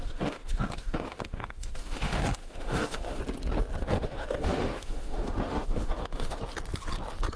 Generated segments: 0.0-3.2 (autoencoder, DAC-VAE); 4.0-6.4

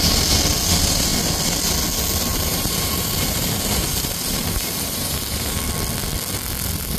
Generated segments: 2.3-5.6 (vocoder, BigVGAN v2)